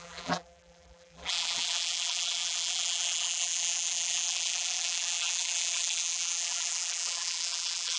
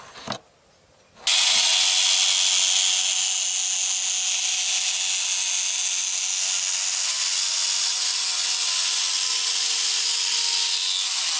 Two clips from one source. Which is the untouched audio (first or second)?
second